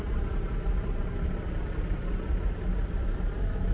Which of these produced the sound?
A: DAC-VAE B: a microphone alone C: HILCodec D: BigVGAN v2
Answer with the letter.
B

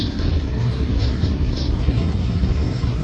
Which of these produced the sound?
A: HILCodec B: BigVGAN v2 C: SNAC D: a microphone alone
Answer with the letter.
C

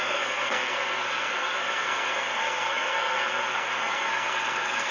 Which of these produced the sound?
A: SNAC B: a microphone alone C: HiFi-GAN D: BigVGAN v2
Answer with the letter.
A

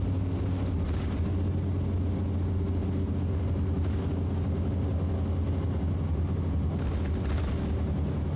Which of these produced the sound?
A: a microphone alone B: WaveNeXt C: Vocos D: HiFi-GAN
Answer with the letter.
A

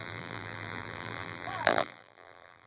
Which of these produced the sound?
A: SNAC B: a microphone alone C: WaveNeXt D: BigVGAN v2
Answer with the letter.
D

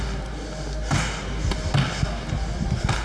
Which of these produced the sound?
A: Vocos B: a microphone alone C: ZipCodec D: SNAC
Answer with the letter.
B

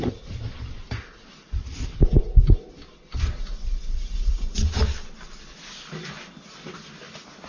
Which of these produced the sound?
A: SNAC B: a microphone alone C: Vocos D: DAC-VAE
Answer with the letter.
B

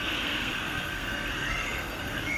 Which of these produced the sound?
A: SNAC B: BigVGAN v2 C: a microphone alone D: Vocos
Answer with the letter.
A